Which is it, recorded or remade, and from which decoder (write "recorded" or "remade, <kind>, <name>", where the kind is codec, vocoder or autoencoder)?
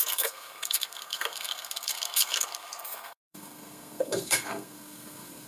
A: remade, codec, SNAC